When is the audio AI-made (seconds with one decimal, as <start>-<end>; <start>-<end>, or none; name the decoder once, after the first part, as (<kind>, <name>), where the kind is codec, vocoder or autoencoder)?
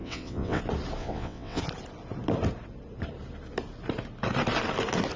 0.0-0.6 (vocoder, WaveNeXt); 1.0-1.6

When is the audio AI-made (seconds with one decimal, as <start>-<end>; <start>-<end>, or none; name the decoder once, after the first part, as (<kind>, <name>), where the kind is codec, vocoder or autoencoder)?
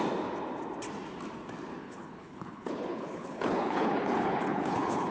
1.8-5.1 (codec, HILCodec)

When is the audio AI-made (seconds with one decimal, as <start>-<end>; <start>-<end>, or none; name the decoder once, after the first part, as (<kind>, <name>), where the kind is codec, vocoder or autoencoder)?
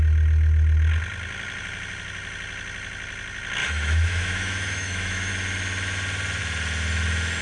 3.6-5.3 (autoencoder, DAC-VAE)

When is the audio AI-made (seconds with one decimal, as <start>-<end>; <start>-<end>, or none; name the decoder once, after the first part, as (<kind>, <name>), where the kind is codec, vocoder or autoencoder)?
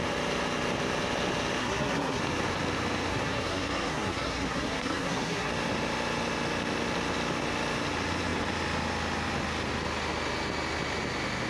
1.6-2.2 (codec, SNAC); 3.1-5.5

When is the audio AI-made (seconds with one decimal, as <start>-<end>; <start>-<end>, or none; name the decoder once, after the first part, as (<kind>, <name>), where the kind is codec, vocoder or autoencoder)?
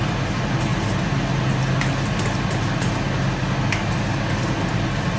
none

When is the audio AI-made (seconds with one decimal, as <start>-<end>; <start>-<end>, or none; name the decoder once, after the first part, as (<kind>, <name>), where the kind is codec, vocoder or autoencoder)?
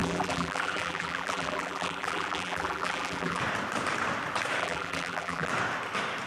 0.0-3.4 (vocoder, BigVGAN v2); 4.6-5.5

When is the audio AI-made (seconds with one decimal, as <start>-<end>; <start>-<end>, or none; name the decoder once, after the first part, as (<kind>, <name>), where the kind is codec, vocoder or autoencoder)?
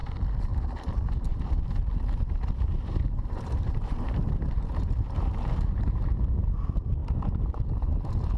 1.3-6.2 (vocoder, BigVGAN v2)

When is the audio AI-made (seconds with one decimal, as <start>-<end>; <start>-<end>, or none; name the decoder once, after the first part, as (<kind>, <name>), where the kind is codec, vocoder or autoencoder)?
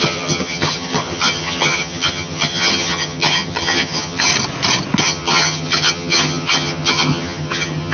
0.0-4.3 (vocoder, HiFi-GAN); 5.0-7.9